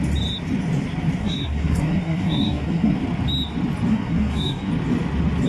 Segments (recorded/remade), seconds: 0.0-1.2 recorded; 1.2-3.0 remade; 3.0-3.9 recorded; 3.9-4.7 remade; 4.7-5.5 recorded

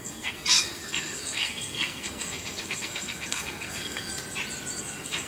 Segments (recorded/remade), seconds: 0.0-4.1 remade; 4.1-4.8 recorded; 4.8-5.3 remade

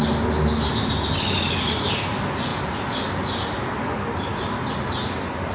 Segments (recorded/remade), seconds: 0.0-5.5 recorded

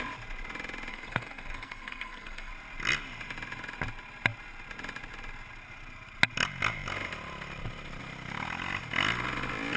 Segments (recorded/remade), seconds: 0.0-0.9 recorded; 0.9-2.5 remade; 2.5-9.8 recorded

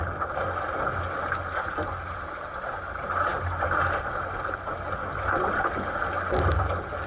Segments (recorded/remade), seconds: 0.0-7.1 recorded

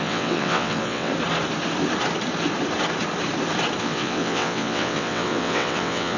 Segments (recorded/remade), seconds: 0.0-1.1 remade; 1.1-3.8 recorded; 3.8-6.2 remade